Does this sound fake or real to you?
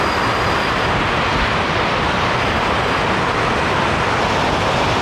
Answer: real